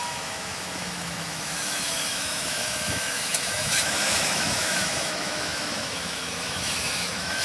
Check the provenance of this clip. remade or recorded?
remade